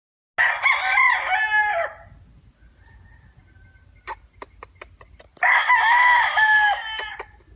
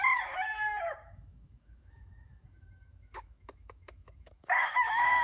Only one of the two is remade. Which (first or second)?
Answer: second